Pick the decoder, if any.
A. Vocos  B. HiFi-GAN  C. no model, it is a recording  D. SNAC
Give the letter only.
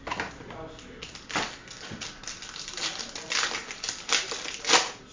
C